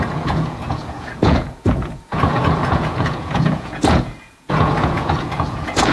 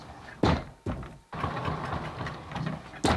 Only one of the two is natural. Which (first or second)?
second